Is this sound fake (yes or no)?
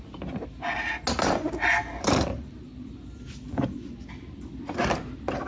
no